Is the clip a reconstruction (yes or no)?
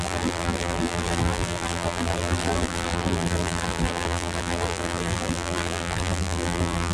yes